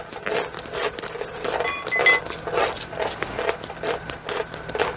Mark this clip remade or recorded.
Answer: recorded